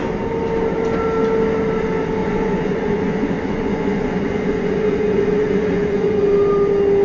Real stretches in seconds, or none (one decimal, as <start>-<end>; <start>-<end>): 0.0-2.2; 6.3-7.0